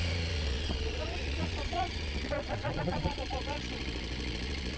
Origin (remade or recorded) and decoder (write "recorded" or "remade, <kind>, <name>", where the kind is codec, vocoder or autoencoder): remade, vocoder, Vocos